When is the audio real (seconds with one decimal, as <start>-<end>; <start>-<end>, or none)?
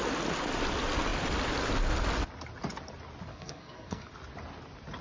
0.0-3.3; 4.1-5.0